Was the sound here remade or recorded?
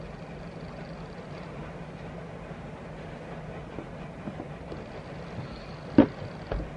recorded